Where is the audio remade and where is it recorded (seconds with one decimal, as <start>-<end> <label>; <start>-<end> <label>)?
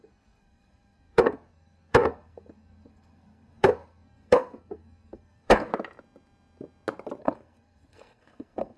0.0-5.7 remade; 5.7-7.2 recorded; 7.2-8.8 remade